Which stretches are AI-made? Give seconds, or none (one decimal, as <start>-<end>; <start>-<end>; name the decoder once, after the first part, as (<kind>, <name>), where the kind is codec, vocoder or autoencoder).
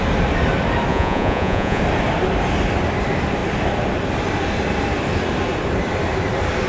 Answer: 0.9-1.8 (vocoder, Vocos)